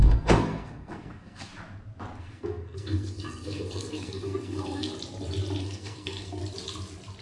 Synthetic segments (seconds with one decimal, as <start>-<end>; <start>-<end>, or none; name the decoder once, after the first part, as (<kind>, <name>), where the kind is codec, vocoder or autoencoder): 0.0-1.5 (codec, SNAC); 2.2-4.9; 5.6-6.4